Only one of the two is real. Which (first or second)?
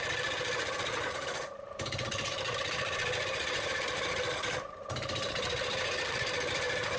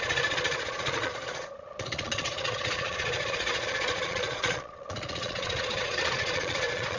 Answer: first